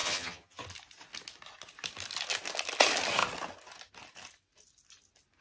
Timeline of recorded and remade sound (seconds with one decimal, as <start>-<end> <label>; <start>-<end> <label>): 0.0-0.6 remade; 0.6-5.4 recorded